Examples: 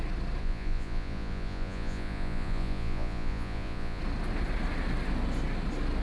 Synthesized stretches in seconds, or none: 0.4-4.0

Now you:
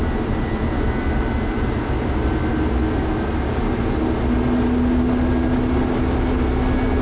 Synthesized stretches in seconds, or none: none

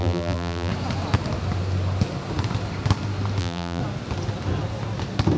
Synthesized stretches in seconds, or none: 0.0-0.7; 3.4-3.8

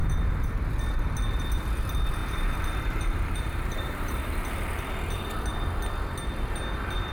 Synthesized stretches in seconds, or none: 0.0-0.7; 2.2-4.8

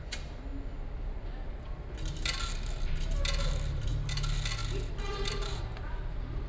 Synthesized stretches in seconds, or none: none